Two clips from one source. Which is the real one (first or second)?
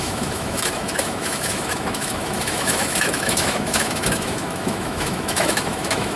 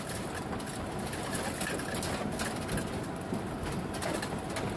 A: second